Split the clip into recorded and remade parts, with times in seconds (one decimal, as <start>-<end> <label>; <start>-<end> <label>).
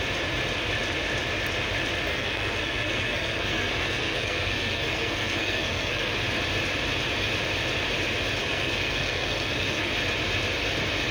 0.0-2.1 recorded; 2.1-6.1 remade; 6.1-8.4 recorded; 8.4-9.9 remade; 9.9-11.1 recorded